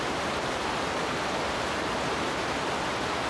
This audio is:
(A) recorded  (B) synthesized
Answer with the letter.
A